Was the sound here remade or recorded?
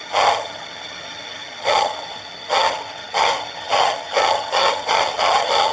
remade